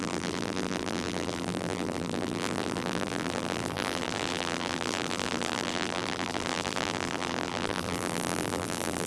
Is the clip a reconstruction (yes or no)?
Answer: yes